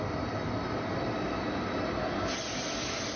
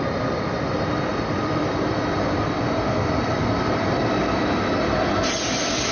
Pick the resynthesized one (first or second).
second